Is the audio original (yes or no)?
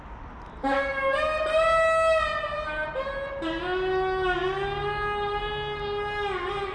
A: yes